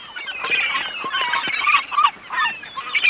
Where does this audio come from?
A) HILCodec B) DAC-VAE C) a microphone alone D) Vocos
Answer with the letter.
C